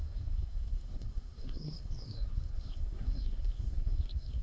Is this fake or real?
fake